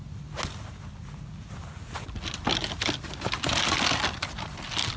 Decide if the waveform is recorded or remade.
recorded